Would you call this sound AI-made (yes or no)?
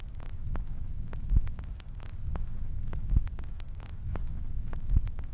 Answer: yes